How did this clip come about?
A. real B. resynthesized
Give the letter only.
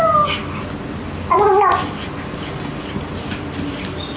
A